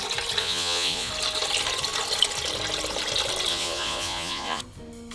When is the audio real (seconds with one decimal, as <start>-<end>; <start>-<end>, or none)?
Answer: 0.0-0.4; 1.1-3.5; 4.6-5.1